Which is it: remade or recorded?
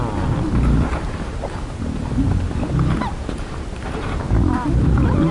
recorded